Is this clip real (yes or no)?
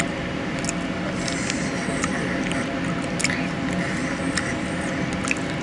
yes